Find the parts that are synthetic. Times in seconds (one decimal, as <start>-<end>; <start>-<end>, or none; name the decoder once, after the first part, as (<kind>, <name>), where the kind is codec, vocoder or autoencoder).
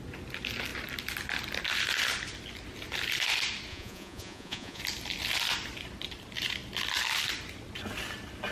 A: 3.7-4.8 (vocoder, Vocos)